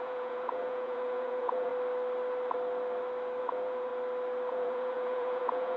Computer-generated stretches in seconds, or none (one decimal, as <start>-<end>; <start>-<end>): 0.0-1.7; 3.4-3.9; 4.5-5.8